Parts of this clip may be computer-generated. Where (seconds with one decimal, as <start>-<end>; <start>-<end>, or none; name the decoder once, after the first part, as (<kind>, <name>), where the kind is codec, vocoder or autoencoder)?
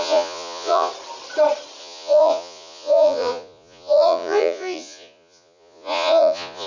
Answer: 0.0-0.9 (vocoder, Vocos); 1.8-6.7